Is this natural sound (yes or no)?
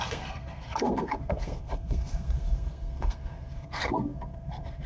no